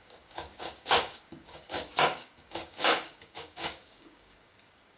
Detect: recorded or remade remade